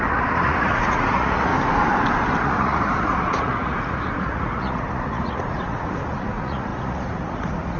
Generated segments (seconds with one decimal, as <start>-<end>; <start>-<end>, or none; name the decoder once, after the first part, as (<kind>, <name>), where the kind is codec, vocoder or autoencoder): 0.0-1.5 (vocoder, Vocos); 2.4-7.8